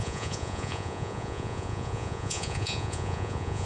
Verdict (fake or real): fake